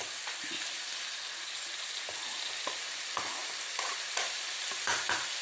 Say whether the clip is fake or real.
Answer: real